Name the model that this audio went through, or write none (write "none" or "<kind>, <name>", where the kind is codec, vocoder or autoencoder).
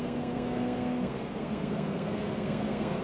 codec, SNAC